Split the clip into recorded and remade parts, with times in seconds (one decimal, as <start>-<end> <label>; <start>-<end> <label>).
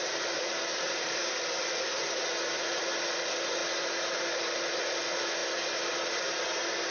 0.0-1.5 remade; 1.5-6.9 recorded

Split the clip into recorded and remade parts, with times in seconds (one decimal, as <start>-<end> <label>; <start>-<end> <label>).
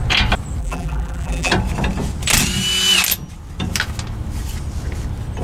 0.0-0.6 recorded; 0.6-1.5 remade; 1.5-5.4 recorded